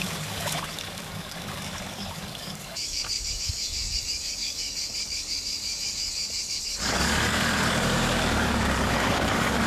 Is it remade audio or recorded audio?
remade